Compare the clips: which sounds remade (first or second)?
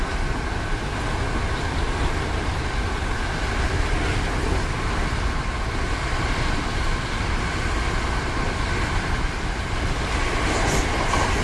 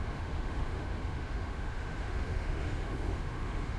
second